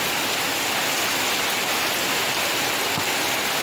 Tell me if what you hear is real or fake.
real